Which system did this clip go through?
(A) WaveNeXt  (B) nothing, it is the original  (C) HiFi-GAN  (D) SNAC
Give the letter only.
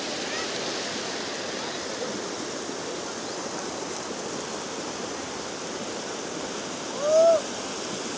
B